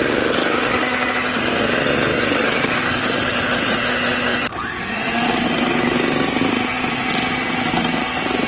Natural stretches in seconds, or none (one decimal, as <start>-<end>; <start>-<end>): 0.0-0.4; 1.1-2.1; 3.3-8.5

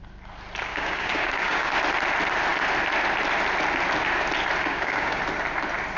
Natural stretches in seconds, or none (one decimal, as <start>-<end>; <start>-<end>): 0.0-0.7; 1.7-4.6; 5.2-6.0

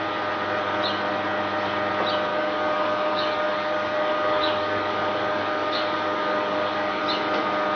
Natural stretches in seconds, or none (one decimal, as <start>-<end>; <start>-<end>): 0.0-2.3; 7.0-7.8

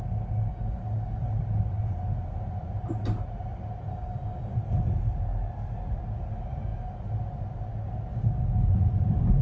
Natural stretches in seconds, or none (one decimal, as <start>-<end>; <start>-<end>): 0.0-0.5; 1.2-3.9; 4.5-9.4

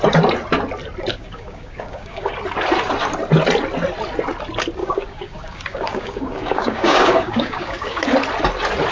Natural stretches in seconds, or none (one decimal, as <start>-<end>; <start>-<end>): 0.0-1.1; 2.3-4.8; 8.1-8.9